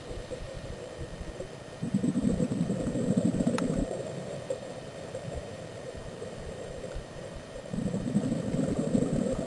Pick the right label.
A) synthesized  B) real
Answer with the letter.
A